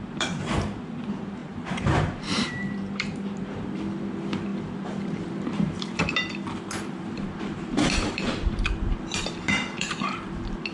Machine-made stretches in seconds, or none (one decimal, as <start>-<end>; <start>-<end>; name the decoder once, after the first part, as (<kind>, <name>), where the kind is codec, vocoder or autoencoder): 0.0-10.7 (vocoder, BigVGAN v2)